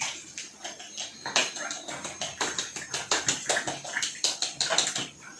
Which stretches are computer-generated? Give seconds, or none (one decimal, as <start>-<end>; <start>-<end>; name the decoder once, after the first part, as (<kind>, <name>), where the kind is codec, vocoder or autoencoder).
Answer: none